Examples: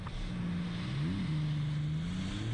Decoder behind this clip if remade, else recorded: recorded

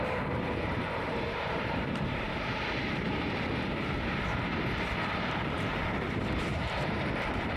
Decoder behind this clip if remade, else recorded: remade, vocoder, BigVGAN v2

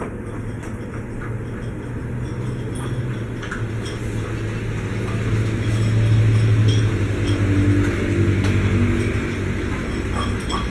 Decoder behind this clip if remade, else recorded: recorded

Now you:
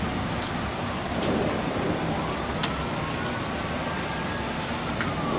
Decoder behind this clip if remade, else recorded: recorded